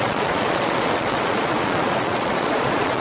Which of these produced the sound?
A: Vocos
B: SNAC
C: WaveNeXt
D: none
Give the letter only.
A